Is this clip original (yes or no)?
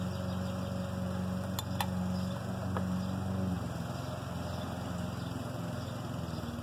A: yes